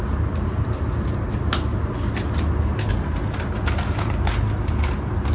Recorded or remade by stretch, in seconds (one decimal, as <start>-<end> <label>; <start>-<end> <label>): 0.0-5.3 recorded